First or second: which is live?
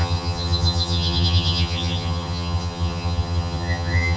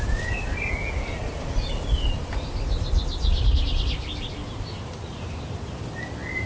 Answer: second